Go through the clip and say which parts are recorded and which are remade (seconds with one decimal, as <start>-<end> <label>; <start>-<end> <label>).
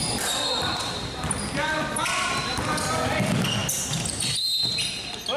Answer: 0.0-2.0 recorded; 2.0-3.0 remade; 3.0-5.4 recorded